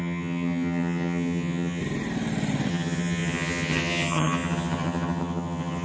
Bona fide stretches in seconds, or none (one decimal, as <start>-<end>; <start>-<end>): 1.8-2.7